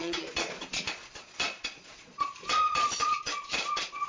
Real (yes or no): no